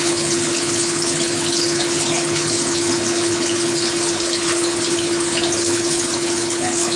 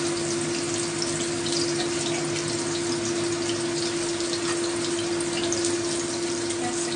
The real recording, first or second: second